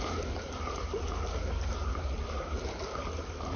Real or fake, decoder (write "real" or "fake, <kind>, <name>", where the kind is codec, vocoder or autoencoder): real